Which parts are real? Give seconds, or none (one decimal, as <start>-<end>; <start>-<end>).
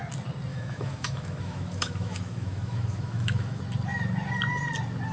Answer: 0.0-0.5; 3.6-5.1